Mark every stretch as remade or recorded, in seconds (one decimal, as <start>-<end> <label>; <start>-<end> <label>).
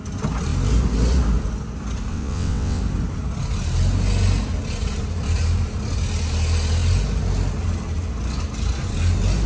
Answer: 0.0-2.1 recorded; 2.1-2.8 remade; 2.8-9.5 recorded